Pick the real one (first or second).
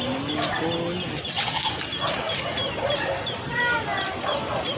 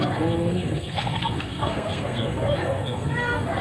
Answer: first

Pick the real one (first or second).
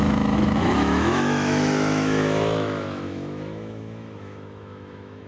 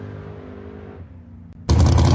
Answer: second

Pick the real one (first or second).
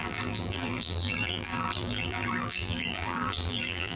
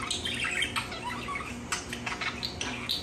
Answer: second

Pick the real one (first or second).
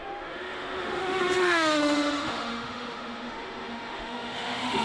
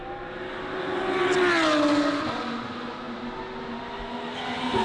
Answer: second